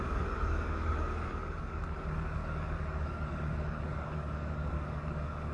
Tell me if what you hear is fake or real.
fake